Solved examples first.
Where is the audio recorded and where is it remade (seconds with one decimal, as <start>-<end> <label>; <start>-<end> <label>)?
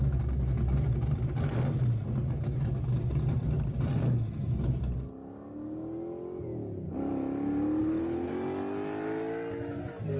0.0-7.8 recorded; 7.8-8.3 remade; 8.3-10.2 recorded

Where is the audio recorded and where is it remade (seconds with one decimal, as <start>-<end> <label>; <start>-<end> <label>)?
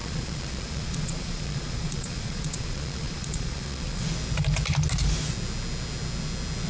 0.0-4.0 remade; 4.0-6.7 recorded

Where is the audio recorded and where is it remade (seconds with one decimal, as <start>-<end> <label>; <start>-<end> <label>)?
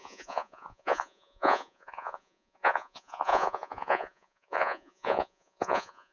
0.0-6.1 remade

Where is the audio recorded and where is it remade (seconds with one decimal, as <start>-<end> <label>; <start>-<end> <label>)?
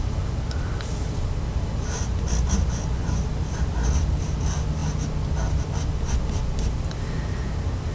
0.0-7.9 recorded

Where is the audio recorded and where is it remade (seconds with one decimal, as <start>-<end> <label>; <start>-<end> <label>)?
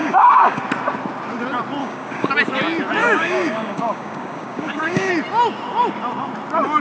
0.0-0.6 remade; 0.6-1.8 recorded; 1.8-2.3 remade; 2.3-3.0 recorded; 3.0-5.1 remade; 5.1-6.8 recorded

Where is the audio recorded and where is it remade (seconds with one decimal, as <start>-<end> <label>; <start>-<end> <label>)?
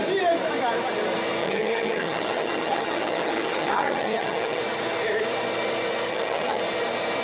0.0-1.4 recorded; 1.4-4.6 remade; 4.6-6.1 recorded; 6.1-6.6 remade; 6.6-7.2 recorded